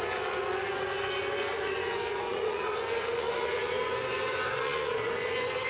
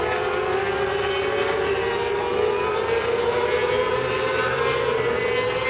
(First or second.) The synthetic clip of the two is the first